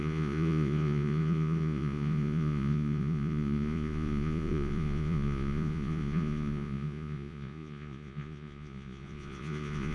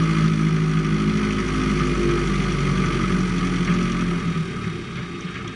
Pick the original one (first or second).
second